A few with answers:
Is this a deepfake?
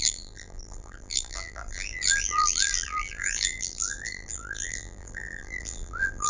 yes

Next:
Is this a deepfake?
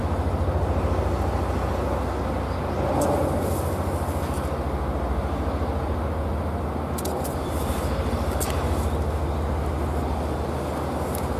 no